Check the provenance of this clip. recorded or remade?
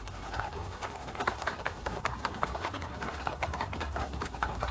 remade